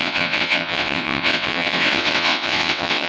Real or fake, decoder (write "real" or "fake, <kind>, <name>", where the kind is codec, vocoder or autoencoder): fake, vocoder, WaveNeXt